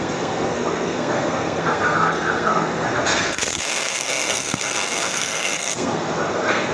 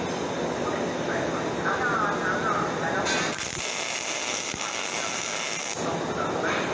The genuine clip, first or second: second